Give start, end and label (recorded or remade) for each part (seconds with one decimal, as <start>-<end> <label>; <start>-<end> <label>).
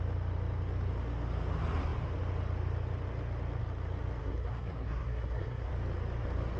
0.0-4.2 recorded; 4.2-5.7 remade; 5.7-6.6 recorded